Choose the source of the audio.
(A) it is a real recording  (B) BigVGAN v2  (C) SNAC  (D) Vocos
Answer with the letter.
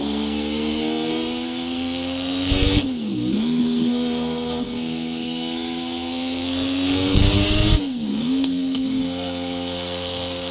C